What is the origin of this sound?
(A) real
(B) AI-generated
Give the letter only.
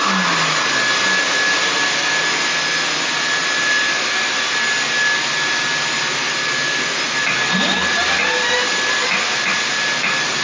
A